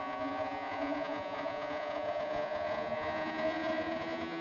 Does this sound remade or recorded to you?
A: remade